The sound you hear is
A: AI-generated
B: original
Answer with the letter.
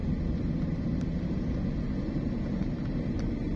B